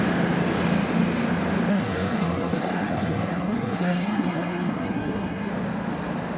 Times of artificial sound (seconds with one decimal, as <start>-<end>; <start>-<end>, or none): 1.7-5.5